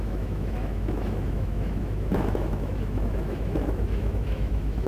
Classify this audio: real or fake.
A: fake